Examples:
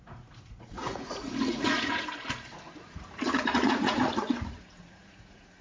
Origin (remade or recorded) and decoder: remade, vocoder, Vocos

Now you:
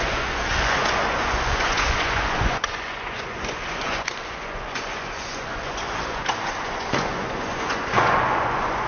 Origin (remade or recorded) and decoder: remade, vocoder, Vocos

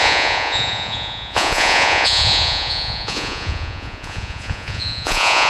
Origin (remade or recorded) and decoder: remade, vocoder, Vocos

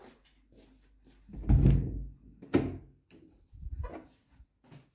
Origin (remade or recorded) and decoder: recorded